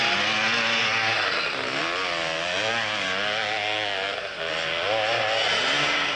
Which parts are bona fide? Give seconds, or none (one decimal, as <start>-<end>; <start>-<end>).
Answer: 0.0-1.1; 1.8-6.2